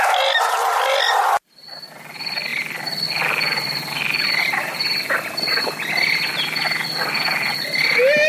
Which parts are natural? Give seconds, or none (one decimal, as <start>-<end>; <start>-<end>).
0.0-8.3